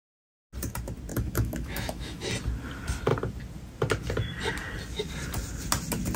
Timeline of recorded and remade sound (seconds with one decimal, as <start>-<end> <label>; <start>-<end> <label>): 0.0-1.1 recorded; 1.1-2.3 remade; 2.3-6.2 recorded